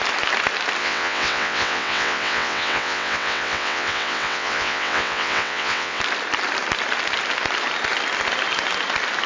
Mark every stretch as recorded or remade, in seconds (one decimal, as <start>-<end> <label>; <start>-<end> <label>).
0.0-0.8 recorded; 0.8-6.0 remade; 6.0-9.3 recorded